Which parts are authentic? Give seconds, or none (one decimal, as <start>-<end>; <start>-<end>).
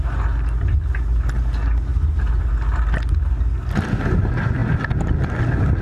0.0-5.8